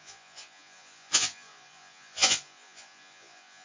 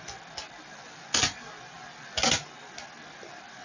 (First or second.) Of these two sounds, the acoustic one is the second